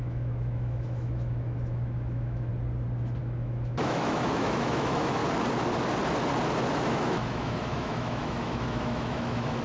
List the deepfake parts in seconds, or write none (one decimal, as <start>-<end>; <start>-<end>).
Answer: 0.0-2.5; 3.2-5.2; 6.7-9.6